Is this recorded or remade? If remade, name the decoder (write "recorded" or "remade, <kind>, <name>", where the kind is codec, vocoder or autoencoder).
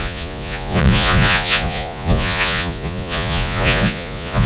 remade, vocoder, Vocos